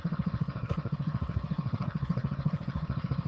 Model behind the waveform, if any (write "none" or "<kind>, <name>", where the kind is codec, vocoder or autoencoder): codec, SNAC